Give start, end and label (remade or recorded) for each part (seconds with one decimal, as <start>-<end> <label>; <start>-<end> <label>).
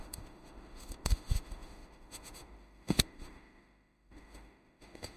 0.0-5.2 remade